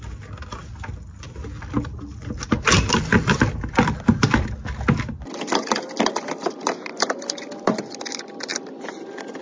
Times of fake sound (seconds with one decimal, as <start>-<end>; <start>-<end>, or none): none